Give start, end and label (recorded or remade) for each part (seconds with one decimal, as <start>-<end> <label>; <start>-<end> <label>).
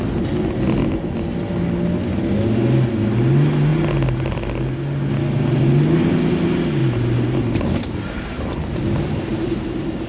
0.0-6.8 recorded; 6.8-8.8 remade; 8.8-9.3 recorded; 9.3-10.1 remade